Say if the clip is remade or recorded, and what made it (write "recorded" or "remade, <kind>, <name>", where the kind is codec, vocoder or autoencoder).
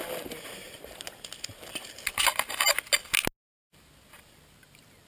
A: recorded